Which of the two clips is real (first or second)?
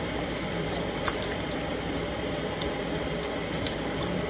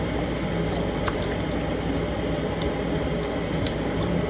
second